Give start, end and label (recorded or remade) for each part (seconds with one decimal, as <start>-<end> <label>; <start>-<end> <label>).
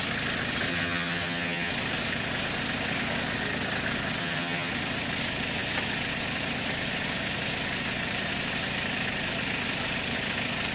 0.0-0.7 recorded; 0.7-1.7 remade; 1.7-4.2 recorded; 4.2-4.7 remade; 4.7-10.7 recorded